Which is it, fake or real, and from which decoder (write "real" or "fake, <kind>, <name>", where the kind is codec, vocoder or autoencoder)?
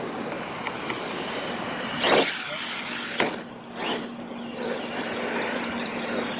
real